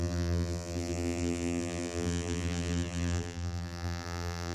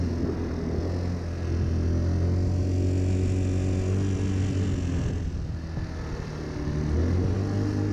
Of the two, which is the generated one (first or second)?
first